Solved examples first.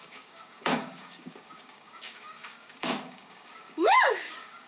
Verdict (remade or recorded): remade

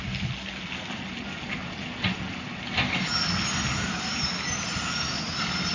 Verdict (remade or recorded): recorded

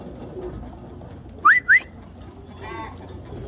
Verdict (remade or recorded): recorded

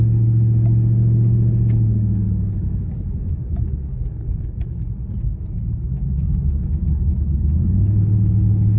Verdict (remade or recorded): remade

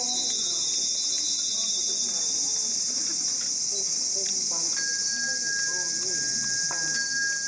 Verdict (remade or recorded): recorded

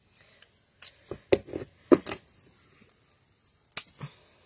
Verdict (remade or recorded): recorded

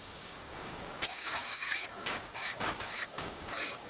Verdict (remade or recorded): remade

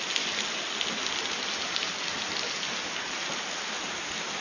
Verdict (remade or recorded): recorded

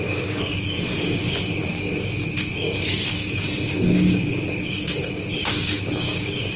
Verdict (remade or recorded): remade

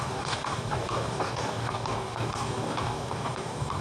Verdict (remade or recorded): remade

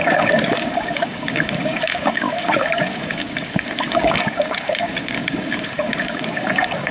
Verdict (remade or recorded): remade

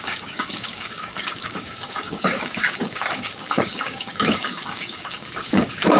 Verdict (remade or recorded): remade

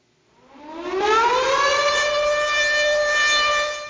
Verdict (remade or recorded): recorded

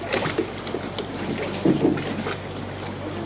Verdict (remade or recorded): recorded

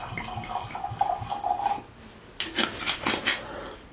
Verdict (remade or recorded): recorded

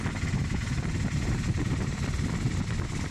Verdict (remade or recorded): recorded